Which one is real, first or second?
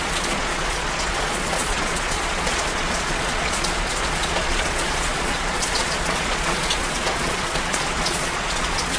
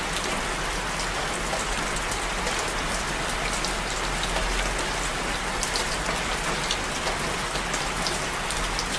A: second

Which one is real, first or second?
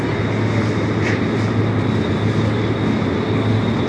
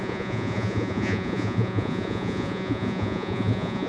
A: first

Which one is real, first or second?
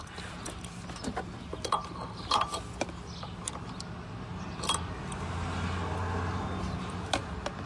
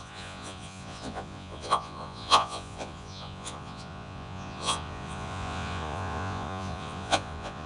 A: first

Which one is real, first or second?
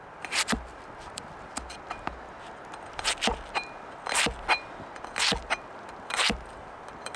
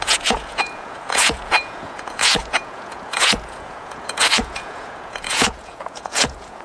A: first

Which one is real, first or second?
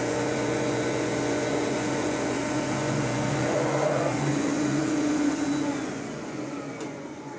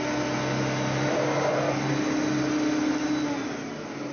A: second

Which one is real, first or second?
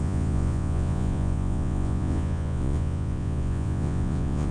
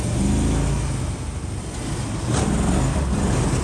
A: second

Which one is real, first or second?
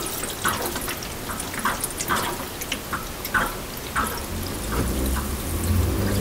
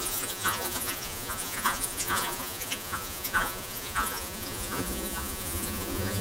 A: first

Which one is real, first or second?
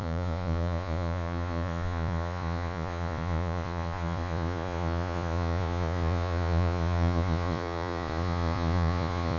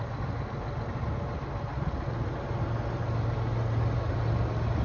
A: second